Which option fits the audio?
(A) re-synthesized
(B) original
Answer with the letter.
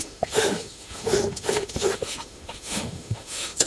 A